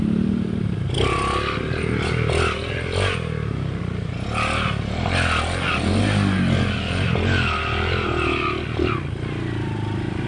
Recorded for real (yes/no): yes